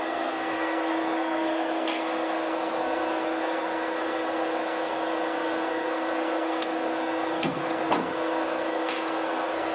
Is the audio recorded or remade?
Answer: remade